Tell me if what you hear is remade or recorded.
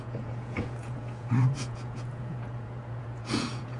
remade